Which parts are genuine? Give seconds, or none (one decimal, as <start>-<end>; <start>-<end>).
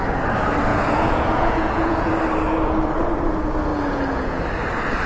0.0-0.7; 2.1-3.7; 4.4-5.1